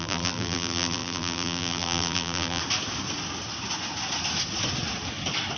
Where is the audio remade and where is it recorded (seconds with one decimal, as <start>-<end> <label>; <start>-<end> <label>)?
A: 0.0-2.6 remade; 2.6-5.6 recorded